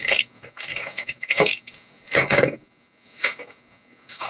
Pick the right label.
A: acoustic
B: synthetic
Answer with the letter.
B